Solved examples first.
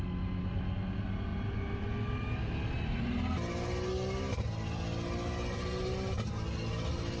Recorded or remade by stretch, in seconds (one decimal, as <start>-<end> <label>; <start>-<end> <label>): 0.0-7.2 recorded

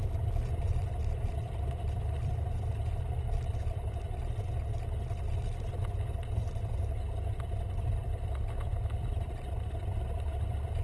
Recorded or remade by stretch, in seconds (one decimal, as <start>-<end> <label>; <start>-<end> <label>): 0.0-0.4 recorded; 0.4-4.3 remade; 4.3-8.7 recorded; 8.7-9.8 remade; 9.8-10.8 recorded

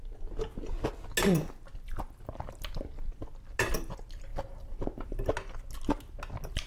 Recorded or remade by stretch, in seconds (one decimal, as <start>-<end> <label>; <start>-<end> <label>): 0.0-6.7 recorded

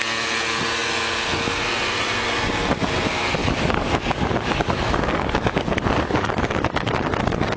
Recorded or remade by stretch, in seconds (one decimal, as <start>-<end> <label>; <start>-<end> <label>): 0.0-3.4 recorded; 3.4-6.9 remade; 6.9-7.6 recorded

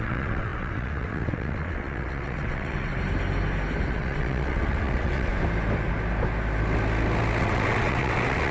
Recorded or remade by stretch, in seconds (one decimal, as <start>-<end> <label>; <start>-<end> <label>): 0.0-2.9 remade; 2.9-3.9 recorded; 3.9-5.3 remade; 5.3-7.4 recorded; 7.4-8.5 remade